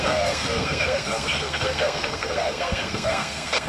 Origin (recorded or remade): remade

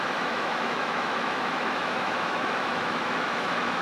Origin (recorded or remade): remade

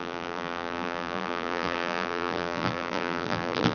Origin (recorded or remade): remade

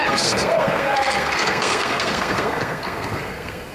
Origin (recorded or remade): remade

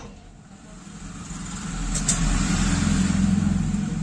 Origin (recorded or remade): remade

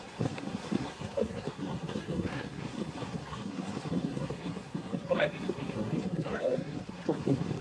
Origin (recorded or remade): remade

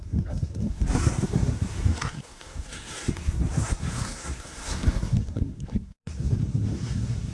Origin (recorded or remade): remade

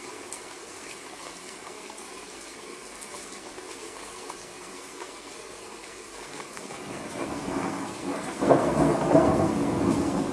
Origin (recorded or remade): remade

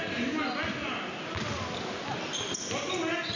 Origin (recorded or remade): recorded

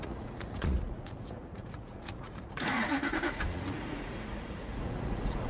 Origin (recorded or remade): remade